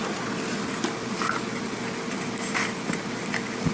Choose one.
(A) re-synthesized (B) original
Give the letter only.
B